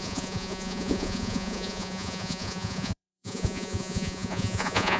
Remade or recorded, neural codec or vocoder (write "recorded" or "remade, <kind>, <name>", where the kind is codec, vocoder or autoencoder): remade, vocoder, Vocos